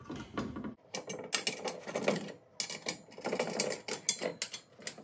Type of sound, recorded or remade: recorded